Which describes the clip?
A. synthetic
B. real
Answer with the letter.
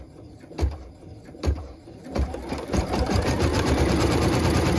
A